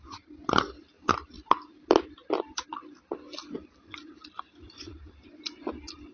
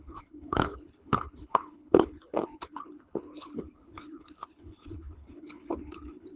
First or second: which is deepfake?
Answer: second